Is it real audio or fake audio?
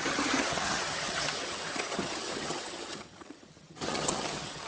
fake